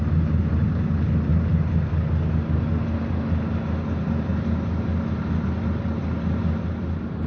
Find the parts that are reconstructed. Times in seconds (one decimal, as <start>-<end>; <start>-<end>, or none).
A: none